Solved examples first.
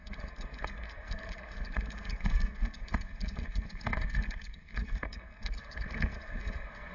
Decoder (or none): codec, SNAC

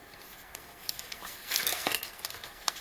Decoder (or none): codec, SNAC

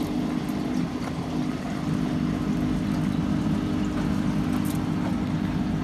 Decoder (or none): none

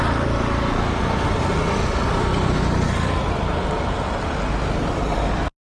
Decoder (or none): none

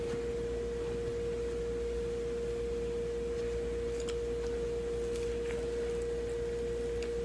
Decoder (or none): none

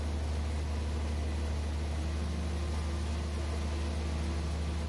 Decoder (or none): none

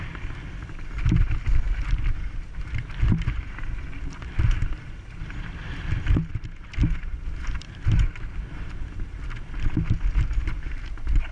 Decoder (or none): none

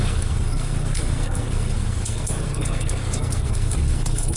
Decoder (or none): codec, SNAC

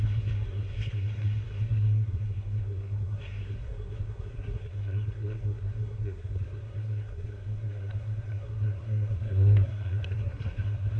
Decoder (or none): codec, SNAC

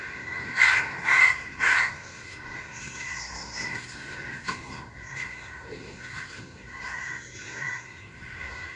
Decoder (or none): codec, SNAC